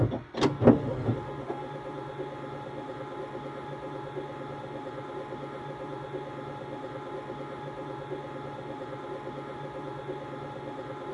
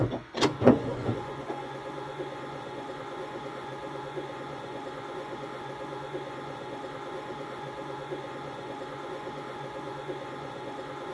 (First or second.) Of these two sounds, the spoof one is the second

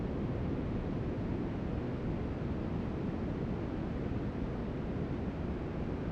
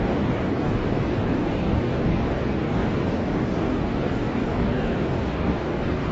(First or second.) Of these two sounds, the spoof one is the second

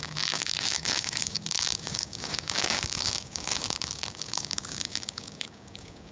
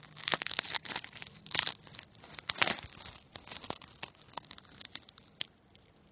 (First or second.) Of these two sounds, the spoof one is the first